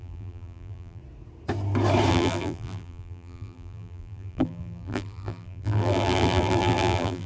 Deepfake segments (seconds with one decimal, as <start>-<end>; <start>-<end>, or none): 0.0-1.0; 2.1-7.3